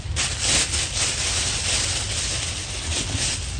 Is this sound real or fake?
real